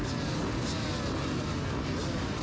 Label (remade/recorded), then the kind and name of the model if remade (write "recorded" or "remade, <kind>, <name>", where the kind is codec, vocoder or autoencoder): recorded